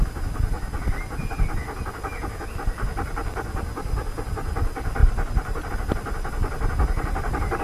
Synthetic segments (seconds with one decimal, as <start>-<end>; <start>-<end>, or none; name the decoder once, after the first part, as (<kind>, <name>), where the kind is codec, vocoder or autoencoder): 5.0-5.7 (vocoder, BigVGAN v2)